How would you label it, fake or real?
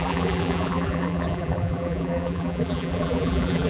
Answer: fake